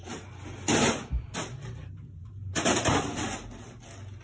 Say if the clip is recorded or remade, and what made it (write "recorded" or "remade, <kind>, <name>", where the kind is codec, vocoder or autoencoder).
recorded